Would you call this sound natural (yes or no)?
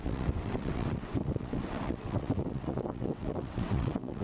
no